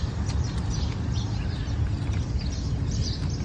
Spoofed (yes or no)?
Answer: no